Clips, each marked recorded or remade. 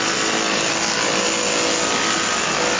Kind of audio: recorded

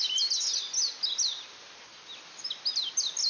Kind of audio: recorded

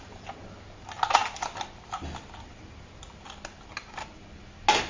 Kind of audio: recorded